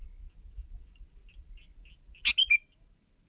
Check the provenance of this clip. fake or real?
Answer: real